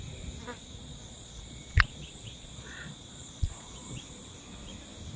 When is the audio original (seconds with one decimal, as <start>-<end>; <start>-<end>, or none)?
0.0-0.8; 3.9-5.2